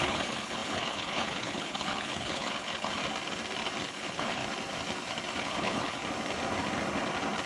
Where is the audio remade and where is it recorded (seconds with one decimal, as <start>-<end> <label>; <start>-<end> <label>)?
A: 0.0-3.0 remade; 3.0-3.9 recorded; 3.9-4.4 remade; 4.4-5.4 recorded; 5.4-6.0 remade; 6.0-7.5 recorded